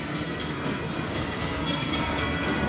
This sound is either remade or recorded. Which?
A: remade